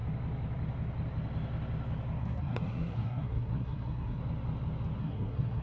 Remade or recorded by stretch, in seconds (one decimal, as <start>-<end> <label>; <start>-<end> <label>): 0.0-2.2 recorded; 2.2-4.2 remade; 4.2-5.0 recorded; 5.0-5.6 remade